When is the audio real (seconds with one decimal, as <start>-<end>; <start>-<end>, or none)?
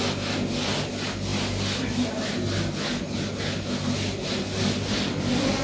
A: 0.0-5.6